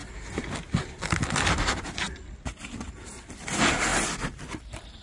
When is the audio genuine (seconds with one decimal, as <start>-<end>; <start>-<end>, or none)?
0.0-5.0